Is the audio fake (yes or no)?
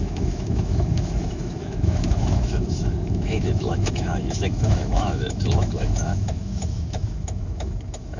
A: yes